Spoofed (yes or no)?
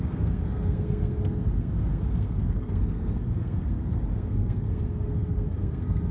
yes